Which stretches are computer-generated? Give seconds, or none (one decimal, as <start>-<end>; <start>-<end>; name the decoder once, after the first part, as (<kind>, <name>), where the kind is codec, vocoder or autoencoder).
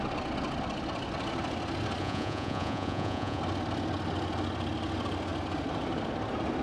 2.0-3.4 (vocoder, Vocos)